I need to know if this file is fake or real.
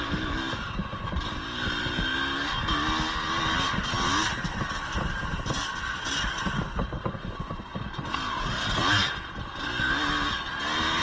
real